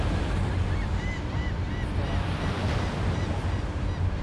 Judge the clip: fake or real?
real